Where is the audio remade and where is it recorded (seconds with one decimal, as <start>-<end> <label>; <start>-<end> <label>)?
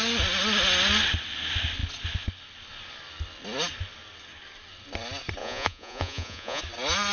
0.0-5.4 recorded; 5.4-6.6 remade; 6.6-7.1 recorded